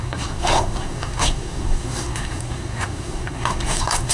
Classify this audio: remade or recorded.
remade